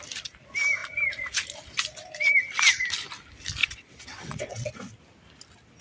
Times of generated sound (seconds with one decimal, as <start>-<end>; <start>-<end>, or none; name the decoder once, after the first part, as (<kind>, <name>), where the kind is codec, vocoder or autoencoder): 3.6-4.7 (vocoder, WaveNeXt)